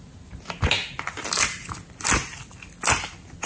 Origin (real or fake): real